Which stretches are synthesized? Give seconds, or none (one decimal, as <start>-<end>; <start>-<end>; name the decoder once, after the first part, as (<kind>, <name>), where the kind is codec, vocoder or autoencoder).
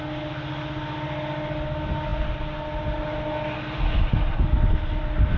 none